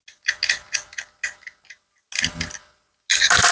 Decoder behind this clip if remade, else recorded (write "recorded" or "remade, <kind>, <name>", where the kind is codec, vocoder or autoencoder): recorded